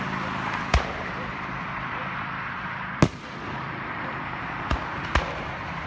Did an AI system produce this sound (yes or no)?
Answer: no